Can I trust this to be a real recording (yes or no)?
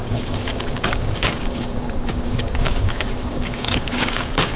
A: no